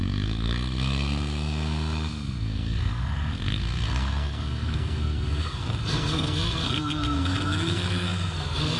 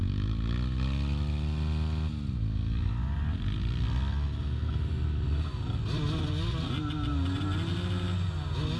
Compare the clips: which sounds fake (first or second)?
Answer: first